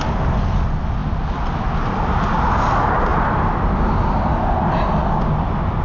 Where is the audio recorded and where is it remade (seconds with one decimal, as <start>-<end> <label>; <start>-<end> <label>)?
0.0-5.8 recorded